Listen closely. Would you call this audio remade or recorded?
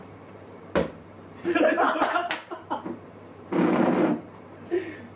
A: remade